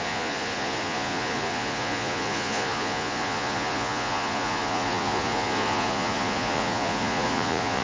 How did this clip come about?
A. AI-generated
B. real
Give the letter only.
A